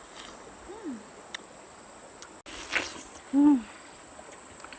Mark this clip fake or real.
real